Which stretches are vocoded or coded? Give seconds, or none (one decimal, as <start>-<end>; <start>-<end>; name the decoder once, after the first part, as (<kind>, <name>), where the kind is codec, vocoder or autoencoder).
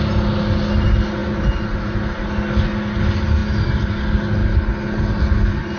none